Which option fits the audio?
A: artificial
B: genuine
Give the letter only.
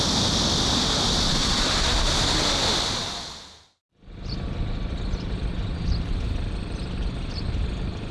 B